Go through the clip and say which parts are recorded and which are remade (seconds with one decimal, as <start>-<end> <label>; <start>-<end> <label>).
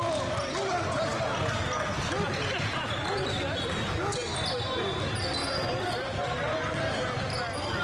0.0-7.8 recorded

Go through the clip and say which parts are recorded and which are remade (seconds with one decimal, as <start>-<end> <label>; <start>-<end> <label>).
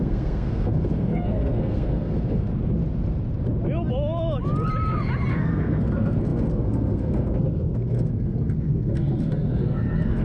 0.0-2.5 remade; 2.5-5.3 recorded; 5.3-10.2 remade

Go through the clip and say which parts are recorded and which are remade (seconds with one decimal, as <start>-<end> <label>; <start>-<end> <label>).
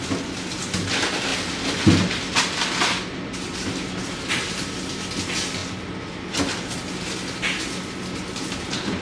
0.0-5.6 recorded; 5.6-6.2 remade; 6.2-9.0 recorded